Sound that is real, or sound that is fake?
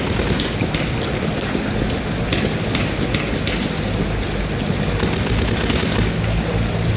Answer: real